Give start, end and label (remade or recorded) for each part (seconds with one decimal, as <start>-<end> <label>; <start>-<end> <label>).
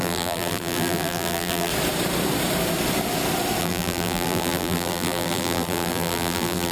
0.0-1.7 remade; 1.7-3.6 recorded; 3.6-6.7 remade